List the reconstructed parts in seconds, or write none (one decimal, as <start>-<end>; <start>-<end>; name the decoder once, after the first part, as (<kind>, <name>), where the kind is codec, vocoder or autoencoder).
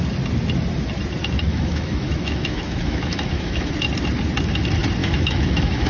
1.5-3.7 (autoencoder, DAC-VAE); 5.0-5.9